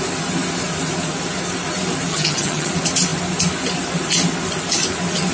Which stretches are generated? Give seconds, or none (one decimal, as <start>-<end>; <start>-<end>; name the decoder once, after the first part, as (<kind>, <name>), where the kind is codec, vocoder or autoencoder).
2.1-2.7 (vocoder, HiFi-GAN)